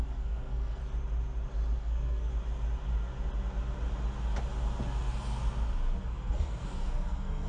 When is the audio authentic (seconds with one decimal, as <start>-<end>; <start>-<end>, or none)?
0.8-1.8; 2.3-6.0